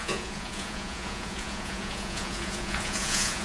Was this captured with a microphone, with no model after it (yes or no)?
no